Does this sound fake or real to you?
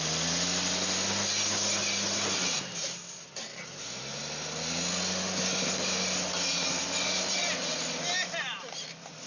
real